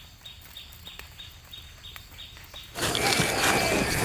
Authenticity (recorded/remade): recorded